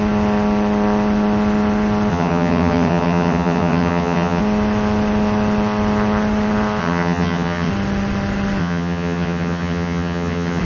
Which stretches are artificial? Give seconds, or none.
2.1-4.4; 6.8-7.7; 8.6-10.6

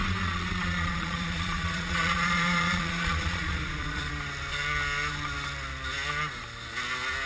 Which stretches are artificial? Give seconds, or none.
0.0-4.1